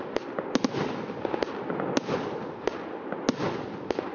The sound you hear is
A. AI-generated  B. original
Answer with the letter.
B